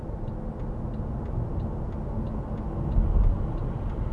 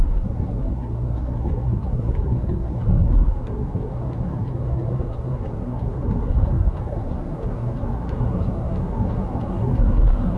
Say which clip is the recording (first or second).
first